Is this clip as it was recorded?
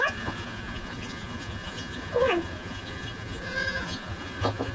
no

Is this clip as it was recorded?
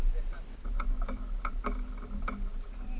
yes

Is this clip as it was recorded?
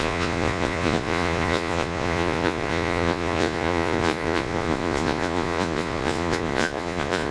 no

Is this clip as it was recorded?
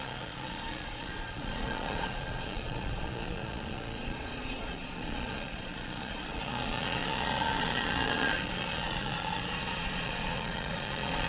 no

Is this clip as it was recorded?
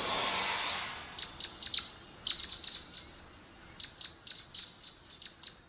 yes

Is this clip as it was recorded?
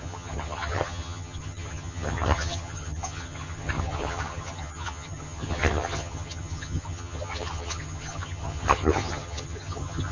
no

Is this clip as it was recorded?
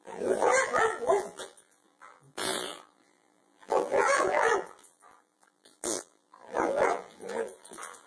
no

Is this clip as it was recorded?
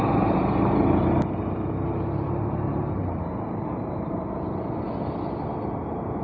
yes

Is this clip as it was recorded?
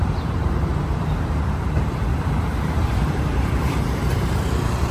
no